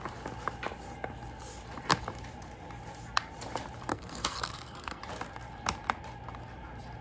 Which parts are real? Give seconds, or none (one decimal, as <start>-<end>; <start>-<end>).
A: 0.0-3.9; 5.0-7.0